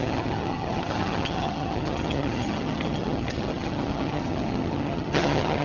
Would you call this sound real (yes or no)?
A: no